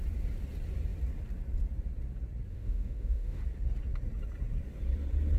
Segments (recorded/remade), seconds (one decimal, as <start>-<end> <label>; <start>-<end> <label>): 0.0-2.5 recorded; 2.5-3.4 remade; 3.4-5.4 recorded